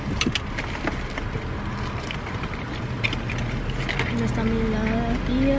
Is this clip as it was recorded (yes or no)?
yes